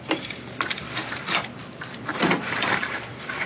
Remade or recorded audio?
remade